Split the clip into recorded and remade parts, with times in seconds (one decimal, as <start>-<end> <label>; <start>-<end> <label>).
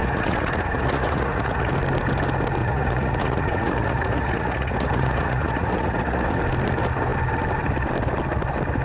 0.0-1.7 remade; 1.7-2.6 recorded; 2.6-6.3 remade; 6.3-8.8 recorded